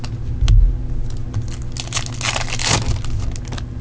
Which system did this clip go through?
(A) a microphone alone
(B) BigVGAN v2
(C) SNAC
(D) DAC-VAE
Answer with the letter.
A